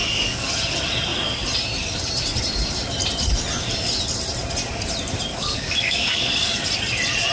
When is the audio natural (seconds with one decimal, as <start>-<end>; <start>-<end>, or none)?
0.5-5.3; 6.7-7.3